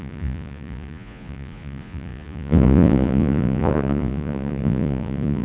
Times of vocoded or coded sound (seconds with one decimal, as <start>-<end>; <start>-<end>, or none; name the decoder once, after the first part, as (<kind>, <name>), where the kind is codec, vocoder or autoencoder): 0.0-5.4 (vocoder, Vocos)